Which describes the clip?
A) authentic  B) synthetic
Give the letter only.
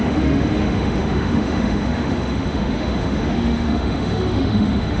B